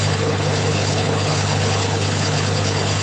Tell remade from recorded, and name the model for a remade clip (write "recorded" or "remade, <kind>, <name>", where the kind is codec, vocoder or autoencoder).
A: remade, codec, HILCodec